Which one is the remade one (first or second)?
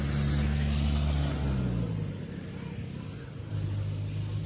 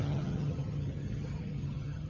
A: second